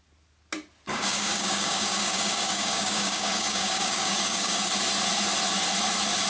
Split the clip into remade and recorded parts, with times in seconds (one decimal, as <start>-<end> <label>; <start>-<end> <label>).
0.0-0.9 recorded; 0.9-4.7 remade; 4.7-6.3 recorded